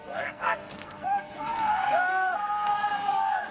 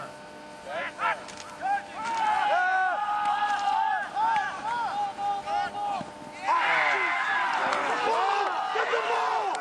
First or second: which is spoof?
first